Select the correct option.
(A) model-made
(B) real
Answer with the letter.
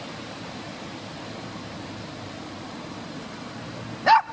A